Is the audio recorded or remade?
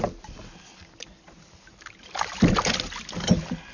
recorded